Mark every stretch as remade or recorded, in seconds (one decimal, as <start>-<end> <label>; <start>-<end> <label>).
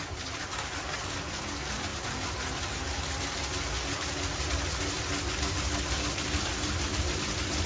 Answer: 0.0-7.7 recorded